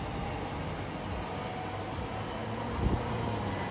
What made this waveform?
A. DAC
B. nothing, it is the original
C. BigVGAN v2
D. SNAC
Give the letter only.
B